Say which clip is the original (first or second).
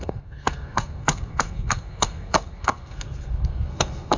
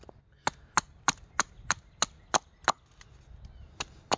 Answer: second